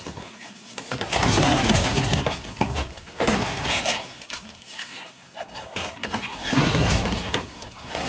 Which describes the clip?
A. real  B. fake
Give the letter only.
B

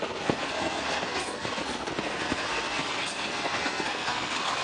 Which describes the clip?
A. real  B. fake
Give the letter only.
B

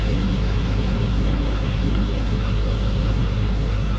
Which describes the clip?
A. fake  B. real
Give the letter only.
A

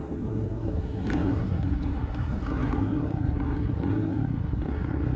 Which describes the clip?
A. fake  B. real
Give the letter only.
A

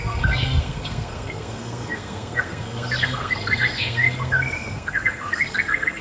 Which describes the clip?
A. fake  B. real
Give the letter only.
A